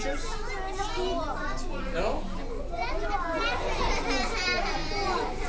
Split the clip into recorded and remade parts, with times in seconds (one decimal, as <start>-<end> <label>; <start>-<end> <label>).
0.0-5.5 recorded